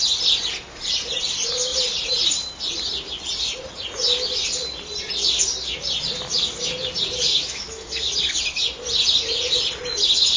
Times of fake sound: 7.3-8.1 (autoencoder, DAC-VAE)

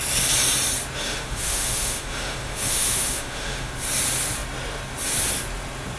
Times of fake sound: 1.0-3.7 (autoencoder, DAC-VAE)

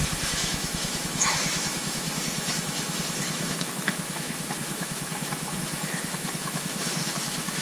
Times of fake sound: 0.0-7.6 (autoencoder, DAC-VAE)

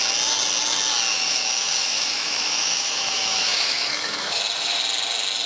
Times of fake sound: 1.1-4.4 (autoencoder, DAC-VAE)

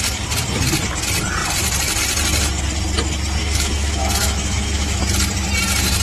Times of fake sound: 3.4-5.0 (autoencoder, DAC-VAE)